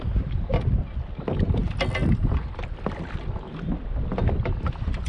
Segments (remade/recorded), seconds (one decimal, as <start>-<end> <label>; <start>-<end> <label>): 0.0-5.1 recorded